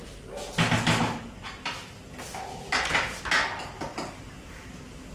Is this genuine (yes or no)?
yes